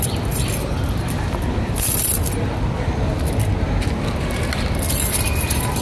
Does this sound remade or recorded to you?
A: recorded